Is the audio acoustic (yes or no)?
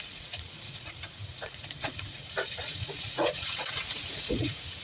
no